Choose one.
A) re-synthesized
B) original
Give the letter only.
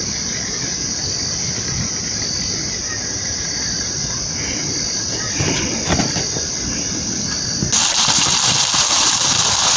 B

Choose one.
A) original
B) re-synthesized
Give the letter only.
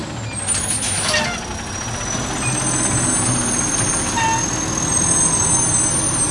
A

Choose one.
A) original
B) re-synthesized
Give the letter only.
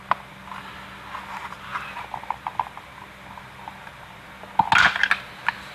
A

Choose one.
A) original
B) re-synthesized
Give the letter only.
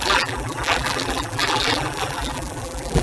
B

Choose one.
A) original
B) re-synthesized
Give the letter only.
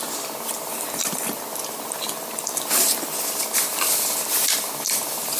B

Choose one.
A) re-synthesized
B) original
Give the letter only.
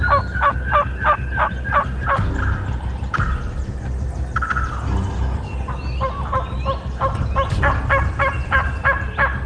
B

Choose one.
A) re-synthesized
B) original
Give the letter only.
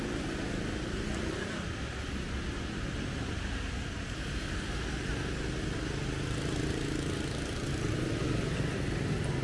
B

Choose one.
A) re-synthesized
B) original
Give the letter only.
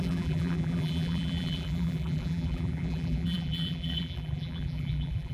A